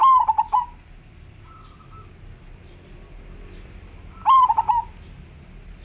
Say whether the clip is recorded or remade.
recorded